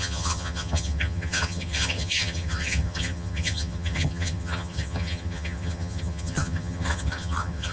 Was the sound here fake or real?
fake